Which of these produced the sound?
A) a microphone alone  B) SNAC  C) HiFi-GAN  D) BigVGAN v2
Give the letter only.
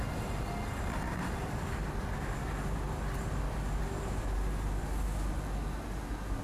A